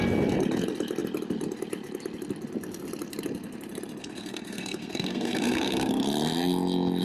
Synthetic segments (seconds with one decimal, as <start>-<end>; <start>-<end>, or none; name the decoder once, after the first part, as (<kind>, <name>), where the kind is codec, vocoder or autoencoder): 4.0-5.9 (codec, SNAC)